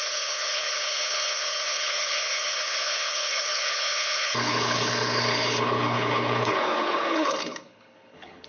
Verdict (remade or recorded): remade